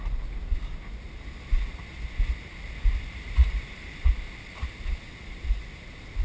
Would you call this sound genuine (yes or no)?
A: yes